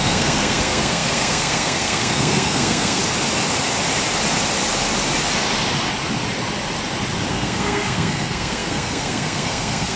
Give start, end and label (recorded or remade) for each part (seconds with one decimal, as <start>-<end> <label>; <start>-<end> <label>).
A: 0.0-3.0 remade; 3.0-7.3 recorded; 7.3-10.0 remade